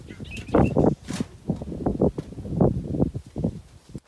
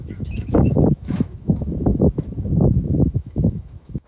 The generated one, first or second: second